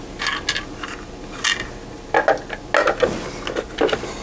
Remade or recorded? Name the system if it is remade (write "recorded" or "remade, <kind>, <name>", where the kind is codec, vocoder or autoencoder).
recorded